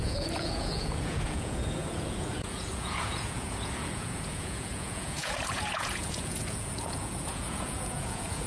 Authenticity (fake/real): fake